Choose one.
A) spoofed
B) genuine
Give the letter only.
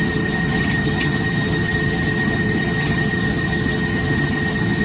A